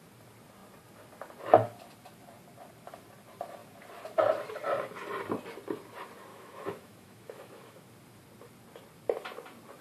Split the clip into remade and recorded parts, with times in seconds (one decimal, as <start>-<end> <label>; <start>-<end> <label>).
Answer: 0.0-6.3 recorded; 6.3-7.9 remade; 7.9-9.8 recorded